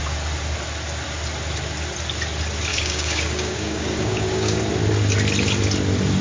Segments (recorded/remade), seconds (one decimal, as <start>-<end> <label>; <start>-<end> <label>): 0.0-2.7 recorded; 2.7-4.6 remade; 4.6-6.2 recorded